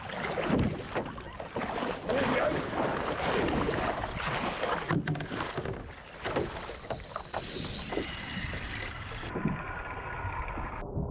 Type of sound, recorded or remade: recorded